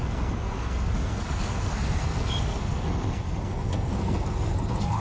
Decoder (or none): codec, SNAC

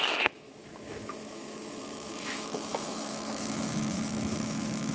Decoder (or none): autoencoder, DAC-VAE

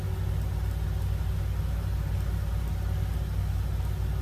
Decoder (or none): none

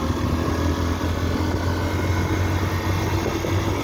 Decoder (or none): none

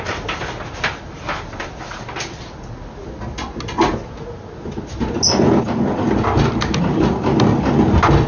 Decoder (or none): none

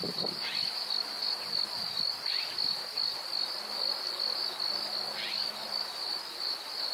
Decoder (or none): none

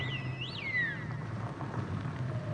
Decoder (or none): none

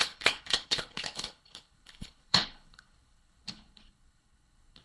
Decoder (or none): codec, HILCodec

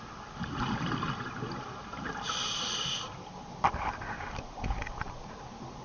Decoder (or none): vocoder, BigVGAN v2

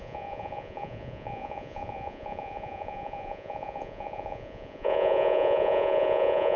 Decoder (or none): vocoder, Vocos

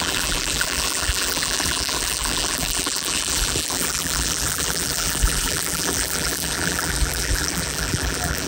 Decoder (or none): vocoder, BigVGAN v2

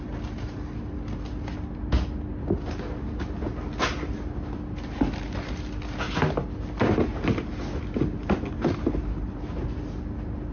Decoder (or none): none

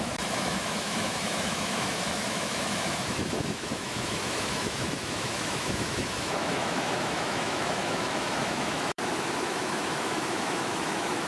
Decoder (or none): autoencoder, DAC-VAE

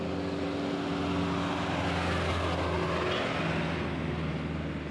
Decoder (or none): none